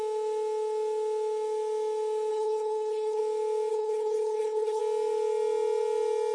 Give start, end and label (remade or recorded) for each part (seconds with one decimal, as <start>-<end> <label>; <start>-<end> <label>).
0.0-2.3 recorded; 2.3-3.2 remade; 3.2-3.7 recorded; 3.7-4.8 remade; 4.8-6.3 recorded